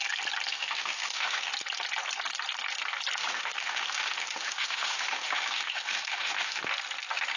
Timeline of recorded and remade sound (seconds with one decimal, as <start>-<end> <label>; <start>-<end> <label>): 0.0-0.5 recorded; 0.5-1.5 remade; 1.5-3.2 recorded; 3.2-6.6 remade; 6.6-7.4 recorded